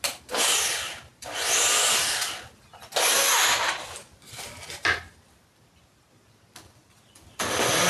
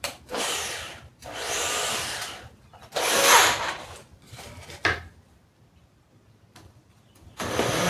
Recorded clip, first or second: first